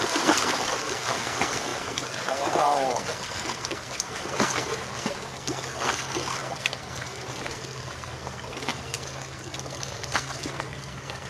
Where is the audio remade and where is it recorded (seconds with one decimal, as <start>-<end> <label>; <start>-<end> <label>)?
0.0-11.3 remade